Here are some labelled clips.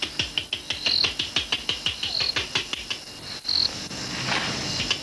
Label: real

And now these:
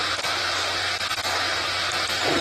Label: real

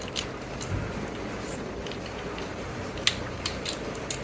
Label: real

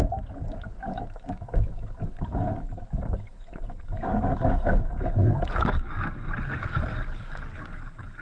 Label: fake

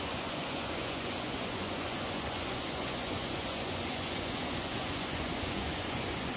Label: fake